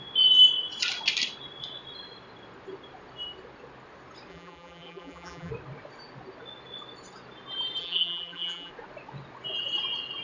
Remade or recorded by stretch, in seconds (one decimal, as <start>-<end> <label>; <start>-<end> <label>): 0.0-4.3 recorded; 4.3-5.5 remade; 5.5-7.8 recorded; 7.8-8.7 remade; 8.7-10.2 recorded

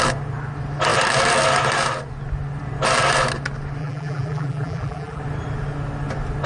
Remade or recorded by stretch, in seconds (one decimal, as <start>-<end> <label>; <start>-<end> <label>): 0.0-3.8 recorded; 3.8-5.2 remade; 5.2-6.5 recorded